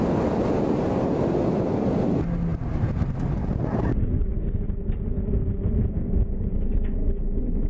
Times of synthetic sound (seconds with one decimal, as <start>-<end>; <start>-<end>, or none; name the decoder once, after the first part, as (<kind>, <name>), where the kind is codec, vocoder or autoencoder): none